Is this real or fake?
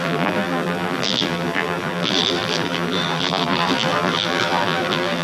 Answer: fake